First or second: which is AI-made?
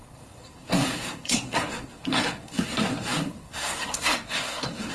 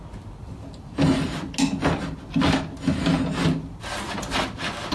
first